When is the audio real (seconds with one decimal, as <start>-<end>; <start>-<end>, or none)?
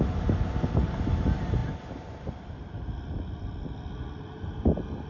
0.0-5.1